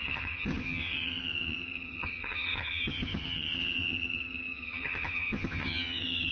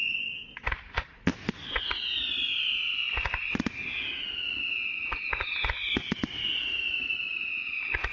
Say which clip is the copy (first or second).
first